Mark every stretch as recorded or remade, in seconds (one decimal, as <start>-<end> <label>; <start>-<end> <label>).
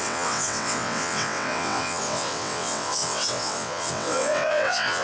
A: 0.0-5.0 remade